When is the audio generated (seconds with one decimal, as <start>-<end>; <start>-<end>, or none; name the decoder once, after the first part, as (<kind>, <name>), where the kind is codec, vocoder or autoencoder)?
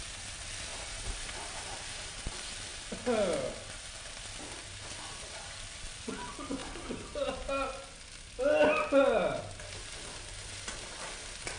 0.7-2.1 (vocoder, BigVGAN v2); 6.6-7.3